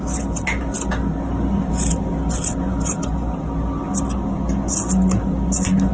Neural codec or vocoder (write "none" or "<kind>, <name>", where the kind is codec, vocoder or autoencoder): none